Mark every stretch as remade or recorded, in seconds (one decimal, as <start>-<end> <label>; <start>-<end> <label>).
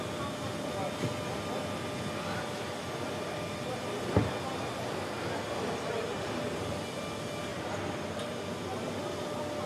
0.0-9.7 recorded